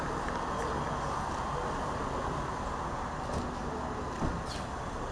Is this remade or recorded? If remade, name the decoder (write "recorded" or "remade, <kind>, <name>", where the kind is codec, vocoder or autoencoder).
recorded